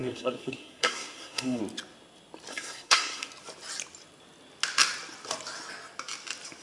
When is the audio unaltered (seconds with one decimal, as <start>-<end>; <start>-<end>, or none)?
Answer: 1.6-2.5; 3.3-6.6

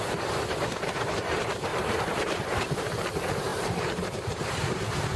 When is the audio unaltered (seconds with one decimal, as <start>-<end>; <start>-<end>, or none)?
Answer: none

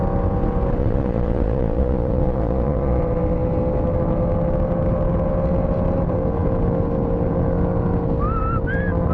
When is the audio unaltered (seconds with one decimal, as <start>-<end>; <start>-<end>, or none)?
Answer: 0.0-0.8; 3.0-9.1

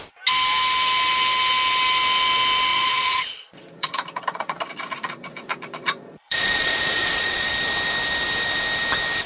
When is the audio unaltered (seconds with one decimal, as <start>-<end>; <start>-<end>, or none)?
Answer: 0.0-2.7; 7.5-9.3